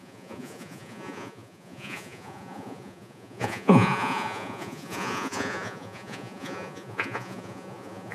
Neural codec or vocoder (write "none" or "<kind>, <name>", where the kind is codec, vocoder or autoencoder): vocoder, Vocos